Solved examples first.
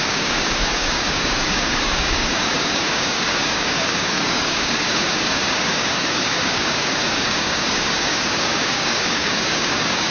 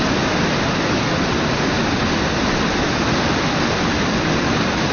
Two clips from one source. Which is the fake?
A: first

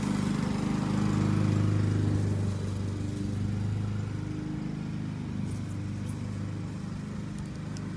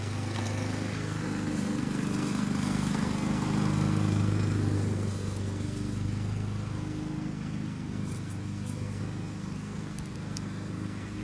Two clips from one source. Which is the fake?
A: second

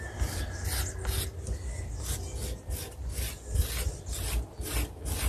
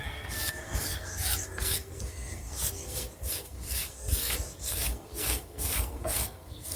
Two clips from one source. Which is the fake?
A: second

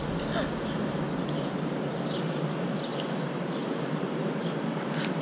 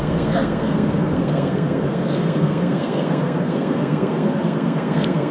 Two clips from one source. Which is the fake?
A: second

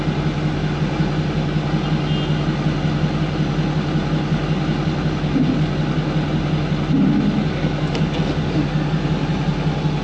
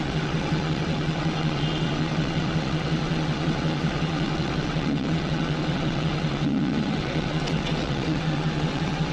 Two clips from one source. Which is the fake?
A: second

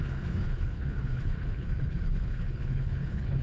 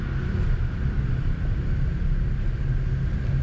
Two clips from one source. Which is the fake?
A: first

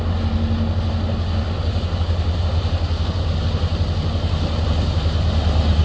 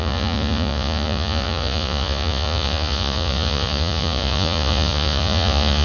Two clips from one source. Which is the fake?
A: second